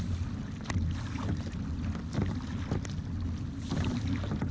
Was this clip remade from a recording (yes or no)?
no